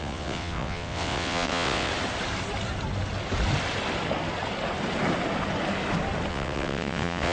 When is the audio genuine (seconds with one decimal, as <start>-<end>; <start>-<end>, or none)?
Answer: 1.9-6.3